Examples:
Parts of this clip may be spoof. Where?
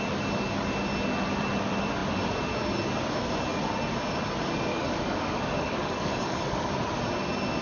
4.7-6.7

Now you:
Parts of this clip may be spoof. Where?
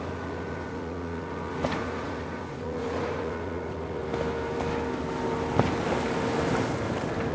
0.0-4.0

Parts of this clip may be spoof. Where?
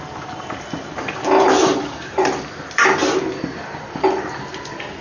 3.0-4.1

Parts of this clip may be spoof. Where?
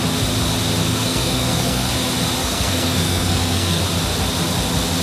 0.8-1.9; 2.4-3.8